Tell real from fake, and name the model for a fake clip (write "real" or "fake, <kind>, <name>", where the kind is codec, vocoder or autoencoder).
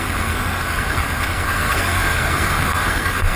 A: fake, codec, SNAC